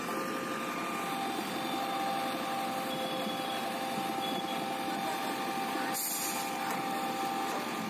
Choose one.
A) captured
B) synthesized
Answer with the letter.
A